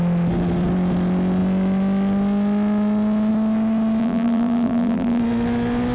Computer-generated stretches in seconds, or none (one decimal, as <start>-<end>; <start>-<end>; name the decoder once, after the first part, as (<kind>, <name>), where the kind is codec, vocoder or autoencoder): 4.0-5.2 (vocoder, BigVGAN v2)